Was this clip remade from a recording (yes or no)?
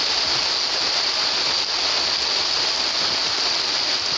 no